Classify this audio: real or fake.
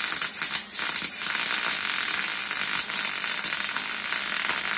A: real